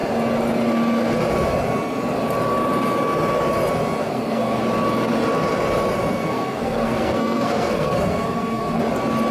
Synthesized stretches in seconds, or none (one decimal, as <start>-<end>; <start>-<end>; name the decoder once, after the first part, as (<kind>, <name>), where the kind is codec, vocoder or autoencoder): 4.0-4.6 (codec, SNAC); 6.0-8.8